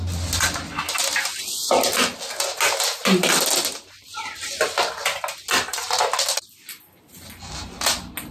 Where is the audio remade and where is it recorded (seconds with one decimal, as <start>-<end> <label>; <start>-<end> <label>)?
0.0-5.7 recorded; 5.7-7.3 remade; 7.3-8.3 recorded